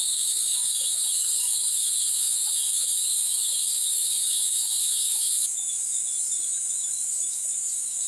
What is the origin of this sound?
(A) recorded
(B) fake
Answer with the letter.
B